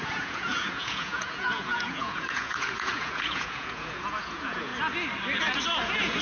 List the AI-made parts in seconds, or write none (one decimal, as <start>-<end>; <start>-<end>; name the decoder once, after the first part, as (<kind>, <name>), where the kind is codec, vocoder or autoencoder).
0.0-4.7 (vocoder, Vocos); 5.8-6.2